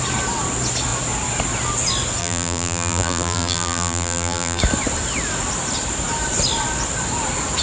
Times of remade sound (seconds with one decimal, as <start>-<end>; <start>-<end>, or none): 2.2-4.6